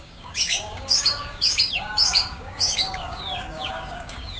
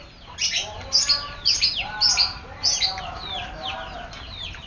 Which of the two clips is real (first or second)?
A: second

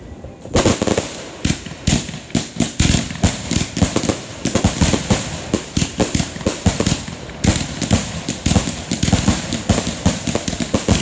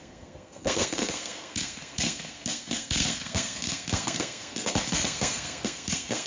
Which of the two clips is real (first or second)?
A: first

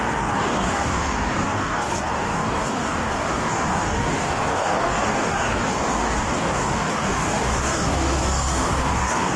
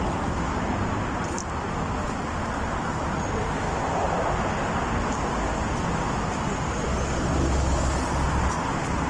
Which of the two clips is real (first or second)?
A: second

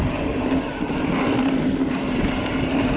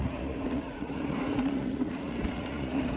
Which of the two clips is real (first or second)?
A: first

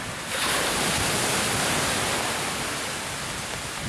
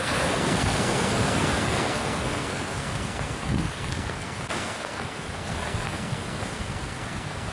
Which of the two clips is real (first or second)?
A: first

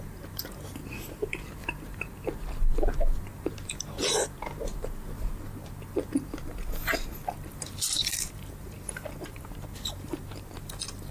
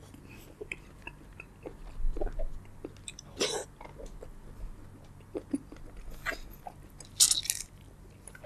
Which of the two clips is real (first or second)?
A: second